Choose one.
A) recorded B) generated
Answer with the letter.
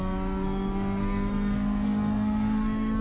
B